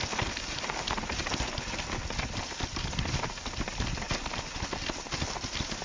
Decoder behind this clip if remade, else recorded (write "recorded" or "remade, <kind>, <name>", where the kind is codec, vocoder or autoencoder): recorded